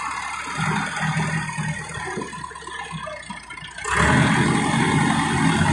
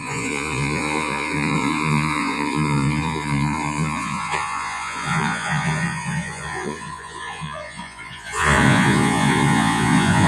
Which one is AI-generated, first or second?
second